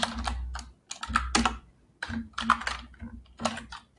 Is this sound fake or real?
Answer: real